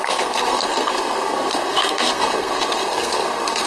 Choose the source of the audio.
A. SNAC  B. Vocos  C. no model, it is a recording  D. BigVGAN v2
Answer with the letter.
A